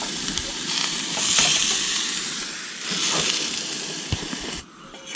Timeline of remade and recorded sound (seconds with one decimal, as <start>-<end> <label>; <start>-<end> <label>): 0.0-1.6 remade; 1.6-3.9 recorded; 3.9-5.2 remade